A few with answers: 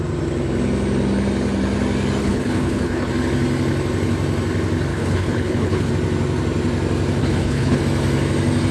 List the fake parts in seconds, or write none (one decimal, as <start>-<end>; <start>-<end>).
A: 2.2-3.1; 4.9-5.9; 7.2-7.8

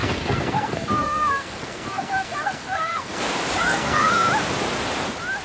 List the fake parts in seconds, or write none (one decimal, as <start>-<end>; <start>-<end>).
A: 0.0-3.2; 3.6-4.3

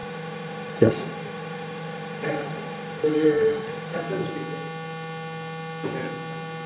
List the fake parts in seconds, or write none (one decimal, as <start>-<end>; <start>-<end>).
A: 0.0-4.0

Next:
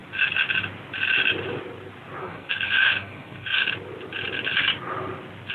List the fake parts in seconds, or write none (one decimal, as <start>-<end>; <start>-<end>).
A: 2.2-3.7

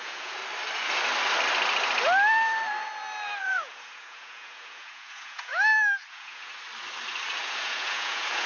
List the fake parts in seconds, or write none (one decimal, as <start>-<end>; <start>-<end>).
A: 0.0-0.4; 3.4-5.5; 6.1-6.5; 7.4-8.5